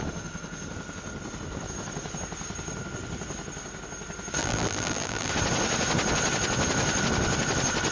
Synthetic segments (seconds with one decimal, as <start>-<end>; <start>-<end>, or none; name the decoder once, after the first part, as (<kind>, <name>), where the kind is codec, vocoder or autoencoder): 4.4-5.3 (vocoder, BigVGAN v2)